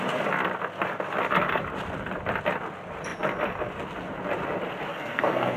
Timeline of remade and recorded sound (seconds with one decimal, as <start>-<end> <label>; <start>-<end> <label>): 0.0-4.9 recorded; 4.9-5.6 remade